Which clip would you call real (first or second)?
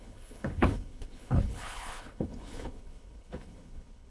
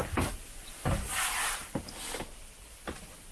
second